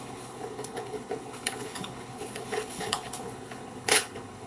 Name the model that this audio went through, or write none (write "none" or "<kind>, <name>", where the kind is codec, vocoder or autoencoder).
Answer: codec, HILCodec